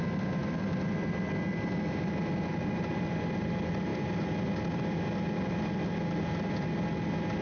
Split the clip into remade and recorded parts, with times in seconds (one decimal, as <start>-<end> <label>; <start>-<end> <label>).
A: 0.0-7.4 recorded